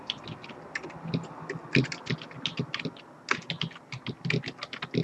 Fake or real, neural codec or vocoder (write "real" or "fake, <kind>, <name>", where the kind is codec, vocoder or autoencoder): real